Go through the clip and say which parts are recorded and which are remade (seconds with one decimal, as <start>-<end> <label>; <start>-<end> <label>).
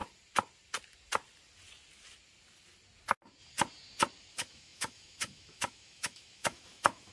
0.0-4.3 recorded; 4.3-7.1 remade